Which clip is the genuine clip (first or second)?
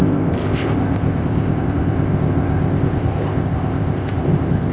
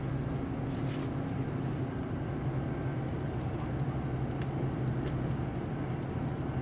second